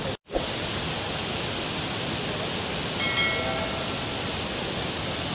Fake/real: real